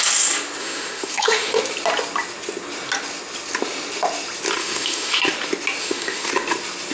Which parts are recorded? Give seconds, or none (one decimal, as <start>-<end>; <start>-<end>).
0.0-0.6; 1.6-4.6; 5.2-5.8; 6.3-6.9